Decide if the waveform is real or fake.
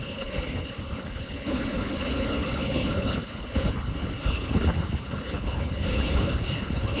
fake